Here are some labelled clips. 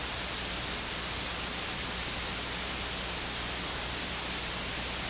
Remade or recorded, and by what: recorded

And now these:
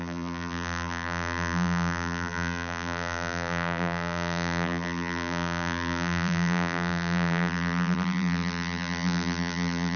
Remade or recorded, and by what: remade, vocoder, BigVGAN v2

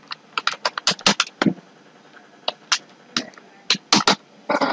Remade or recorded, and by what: recorded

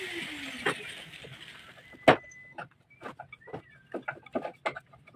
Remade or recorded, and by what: recorded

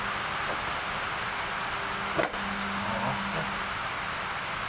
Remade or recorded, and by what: recorded